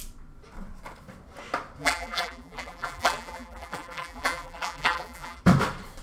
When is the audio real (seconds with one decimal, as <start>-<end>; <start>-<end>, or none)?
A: 0.0-1.8; 5.4-6.0